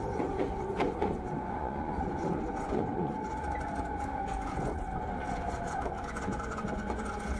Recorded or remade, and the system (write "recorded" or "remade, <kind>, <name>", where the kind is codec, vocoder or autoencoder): remade, vocoder, Vocos